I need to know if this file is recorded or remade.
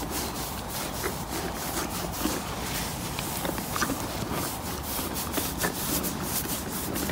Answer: recorded